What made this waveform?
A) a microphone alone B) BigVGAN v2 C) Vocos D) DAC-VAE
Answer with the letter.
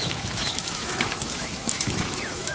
D